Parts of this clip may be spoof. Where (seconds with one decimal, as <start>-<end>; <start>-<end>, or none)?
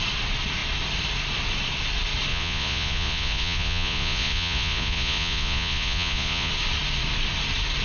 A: 2.3-6.5